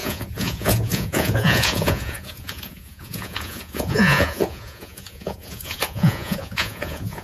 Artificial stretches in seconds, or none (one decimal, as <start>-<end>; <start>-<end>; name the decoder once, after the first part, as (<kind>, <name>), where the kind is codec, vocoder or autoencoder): 0.0-7.2 (vocoder, Vocos)